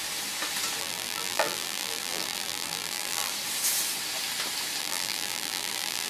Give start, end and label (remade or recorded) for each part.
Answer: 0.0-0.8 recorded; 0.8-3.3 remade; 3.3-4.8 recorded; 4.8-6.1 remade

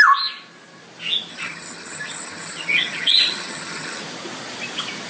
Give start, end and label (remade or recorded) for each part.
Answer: 0.0-1.3 recorded; 1.3-4.0 remade; 4.0-5.1 recorded

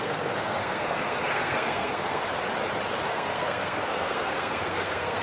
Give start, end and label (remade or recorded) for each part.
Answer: 0.0-2.2 remade; 2.2-3.1 recorded; 3.1-5.2 remade

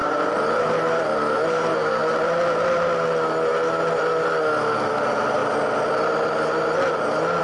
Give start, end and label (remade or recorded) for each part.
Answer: 0.0-2.0 remade; 2.0-4.7 recorded; 4.7-5.4 remade; 5.4-7.4 recorded

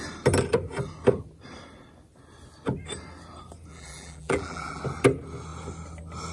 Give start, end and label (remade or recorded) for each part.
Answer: 0.0-3.7 recorded; 3.7-4.8 remade; 4.8-6.3 recorded

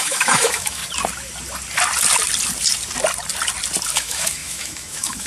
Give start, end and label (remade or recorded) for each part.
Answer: 0.0-0.8 remade; 0.8-3.9 recorded; 3.9-5.3 remade

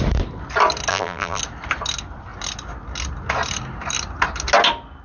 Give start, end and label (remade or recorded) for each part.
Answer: 0.0-0.9 recorded; 0.9-1.4 remade; 1.4-5.0 recorded